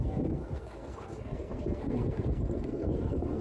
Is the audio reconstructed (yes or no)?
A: yes